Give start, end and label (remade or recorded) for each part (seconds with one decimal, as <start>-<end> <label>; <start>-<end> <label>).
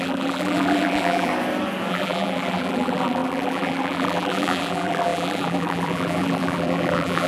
0.0-1.3 remade; 1.3-1.9 recorded; 1.9-7.3 remade